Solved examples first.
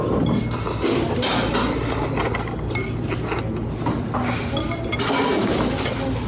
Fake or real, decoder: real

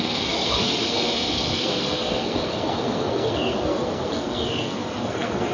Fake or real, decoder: fake, codec, SNAC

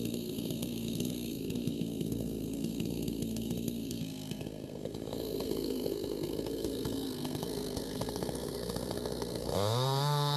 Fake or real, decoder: fake, codec, SNAC